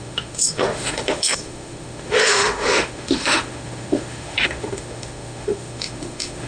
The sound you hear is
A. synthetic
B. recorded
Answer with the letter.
A